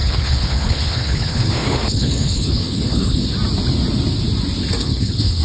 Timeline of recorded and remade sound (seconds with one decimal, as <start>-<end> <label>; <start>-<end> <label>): 0.0-3.2 remade; 3.2-4.8 recorded; 4.8-5.4 remade